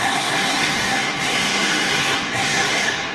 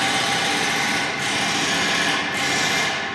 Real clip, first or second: second